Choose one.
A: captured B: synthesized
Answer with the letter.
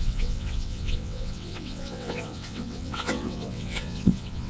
B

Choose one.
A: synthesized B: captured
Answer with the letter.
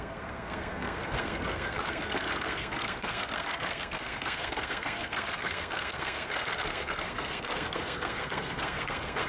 A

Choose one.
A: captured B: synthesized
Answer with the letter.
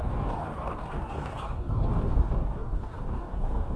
B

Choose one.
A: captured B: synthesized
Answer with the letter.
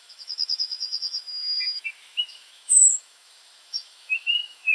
B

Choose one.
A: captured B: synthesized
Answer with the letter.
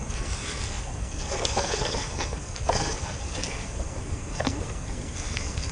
B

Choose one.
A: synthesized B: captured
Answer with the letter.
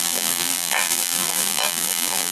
A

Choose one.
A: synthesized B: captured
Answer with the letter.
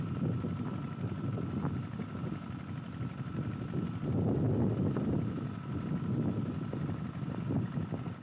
B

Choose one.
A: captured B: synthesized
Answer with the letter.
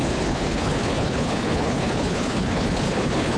B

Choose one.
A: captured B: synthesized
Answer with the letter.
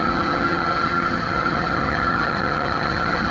B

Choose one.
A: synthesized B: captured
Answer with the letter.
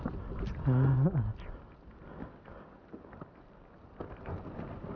B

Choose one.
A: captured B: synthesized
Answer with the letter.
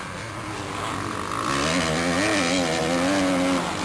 A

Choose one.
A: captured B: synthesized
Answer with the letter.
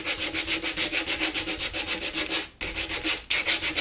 A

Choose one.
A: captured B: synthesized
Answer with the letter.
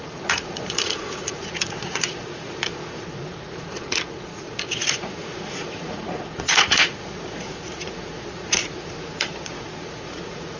B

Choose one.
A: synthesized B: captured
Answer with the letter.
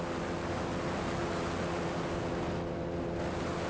B